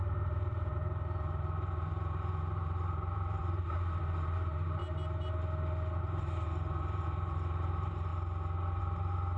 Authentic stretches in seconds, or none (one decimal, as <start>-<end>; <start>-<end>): 4.8-6.0; 8.1-8.8